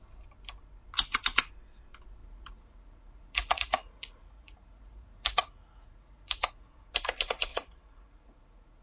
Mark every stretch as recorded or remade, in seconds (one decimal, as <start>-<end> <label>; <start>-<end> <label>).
0.0-2.2 recorded; 2.2-6.7 remade; 6.7-7.5 recorded; 7.5-8.8 remade